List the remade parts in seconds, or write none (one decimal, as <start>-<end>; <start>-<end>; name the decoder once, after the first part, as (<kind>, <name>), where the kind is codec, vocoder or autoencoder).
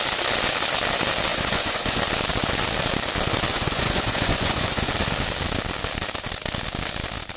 1.3-2.0 (vocoder, Vocos); 3.5-4.9